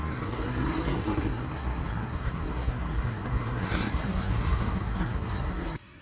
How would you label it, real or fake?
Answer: fake